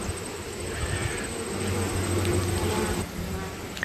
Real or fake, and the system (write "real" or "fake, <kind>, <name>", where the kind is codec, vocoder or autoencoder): real